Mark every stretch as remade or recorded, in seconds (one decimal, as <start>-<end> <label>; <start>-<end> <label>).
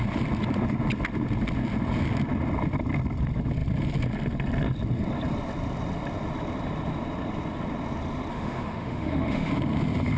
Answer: 0.0-8.3 recorded; 8.3-9.5 remade; 9.5-10.2 recorded